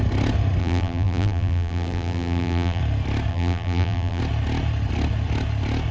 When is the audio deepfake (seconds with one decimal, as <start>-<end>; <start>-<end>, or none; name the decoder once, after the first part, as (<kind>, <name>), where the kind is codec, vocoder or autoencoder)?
0.6-2.8 (vocoder, BigVGAN v2); 3.3-4.2